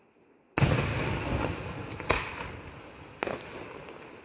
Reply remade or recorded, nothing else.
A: recorded